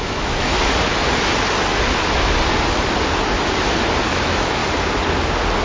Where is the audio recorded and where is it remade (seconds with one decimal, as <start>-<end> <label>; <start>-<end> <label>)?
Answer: 0.0-0.9 remade; 0.9-4.1 recorded; 4.1-4.6 remade; 4.6-5.6 recorded